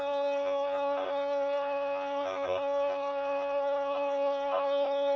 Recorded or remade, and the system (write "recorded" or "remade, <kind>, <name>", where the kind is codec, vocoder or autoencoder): remade, codec, SNAC